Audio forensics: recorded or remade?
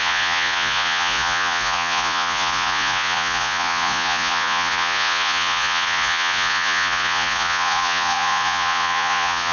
remade